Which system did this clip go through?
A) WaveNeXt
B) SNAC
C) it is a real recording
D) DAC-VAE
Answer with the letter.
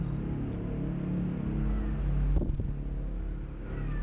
C